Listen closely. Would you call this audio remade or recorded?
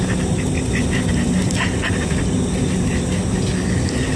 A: recorded